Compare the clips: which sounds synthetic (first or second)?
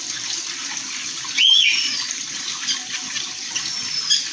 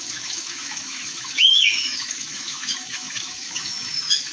second